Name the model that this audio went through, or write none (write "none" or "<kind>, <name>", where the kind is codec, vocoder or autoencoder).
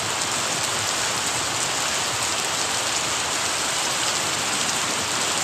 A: none